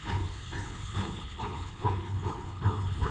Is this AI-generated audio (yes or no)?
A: yes